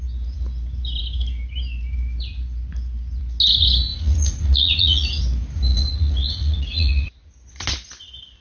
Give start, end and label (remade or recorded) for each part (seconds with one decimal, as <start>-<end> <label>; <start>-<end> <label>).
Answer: 0.0-3.9 recorded; 3.9-5.2 remade; 5.2-5.7 recorded; 5.7-7.1 remade; 7.1-8.4 recorded